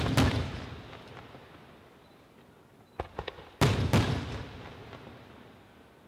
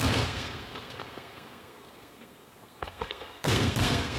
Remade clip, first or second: second